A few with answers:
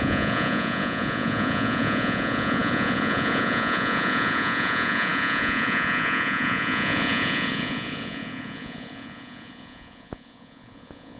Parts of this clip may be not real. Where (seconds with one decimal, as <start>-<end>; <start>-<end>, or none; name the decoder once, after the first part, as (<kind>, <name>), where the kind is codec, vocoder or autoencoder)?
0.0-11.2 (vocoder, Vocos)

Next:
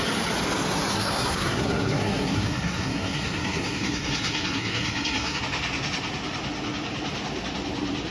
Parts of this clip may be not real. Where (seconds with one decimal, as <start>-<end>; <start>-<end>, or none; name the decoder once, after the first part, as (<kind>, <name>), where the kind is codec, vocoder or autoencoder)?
0.9-5.4 (codec, SNAC)

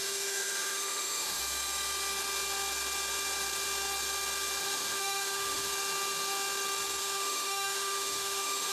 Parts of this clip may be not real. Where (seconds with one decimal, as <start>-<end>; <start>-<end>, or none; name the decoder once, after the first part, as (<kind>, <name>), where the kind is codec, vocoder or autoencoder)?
0.0-1.4 (autoencoder, DAC-VAE); 4.6-5.7; 7.0-8.7

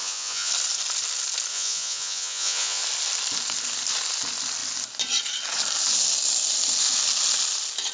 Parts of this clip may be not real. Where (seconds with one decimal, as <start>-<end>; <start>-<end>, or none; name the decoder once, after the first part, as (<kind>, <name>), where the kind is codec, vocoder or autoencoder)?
0.0-0.5 (vocoder, Vocos); 1.5-2.8

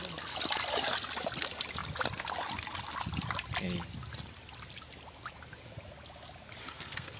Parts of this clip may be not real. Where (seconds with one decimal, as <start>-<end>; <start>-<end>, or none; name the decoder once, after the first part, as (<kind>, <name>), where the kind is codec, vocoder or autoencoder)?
6.6-7.2 (codec, SNAC)

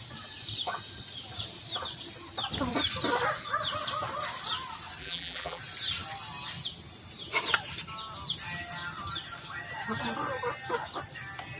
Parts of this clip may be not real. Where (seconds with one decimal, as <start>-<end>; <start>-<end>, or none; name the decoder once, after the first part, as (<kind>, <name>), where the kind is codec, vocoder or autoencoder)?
5.0-5.6 (vocoder, BigVGAN v2)

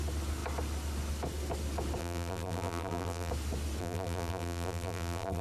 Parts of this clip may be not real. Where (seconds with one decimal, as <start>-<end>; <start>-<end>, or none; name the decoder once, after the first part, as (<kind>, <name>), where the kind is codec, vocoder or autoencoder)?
2.0-3.3 (vocoder, BigVGAN v2); 3.8-5.4